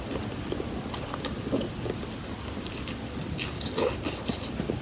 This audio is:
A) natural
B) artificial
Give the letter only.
A